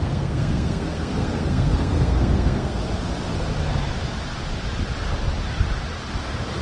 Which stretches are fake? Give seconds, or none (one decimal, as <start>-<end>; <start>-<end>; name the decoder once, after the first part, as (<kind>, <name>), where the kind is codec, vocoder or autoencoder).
0.0-2.8 (codec, SNAC)